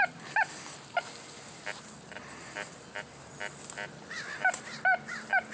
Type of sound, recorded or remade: recorded